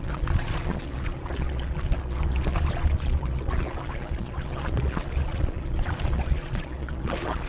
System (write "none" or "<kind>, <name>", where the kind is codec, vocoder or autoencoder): vocoder, Vocos